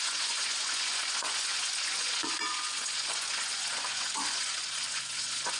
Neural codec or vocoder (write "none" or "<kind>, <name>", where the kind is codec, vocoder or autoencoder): vocoder, Vocos